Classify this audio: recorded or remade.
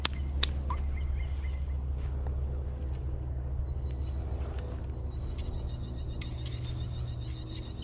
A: recorded